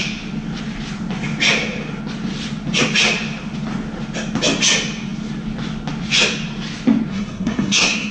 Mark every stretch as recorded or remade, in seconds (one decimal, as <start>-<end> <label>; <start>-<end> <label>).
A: 0.0-7.1 recorded; 7.1-8.1 remade